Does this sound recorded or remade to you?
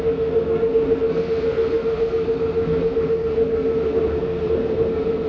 remade